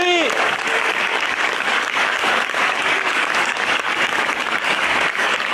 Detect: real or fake fake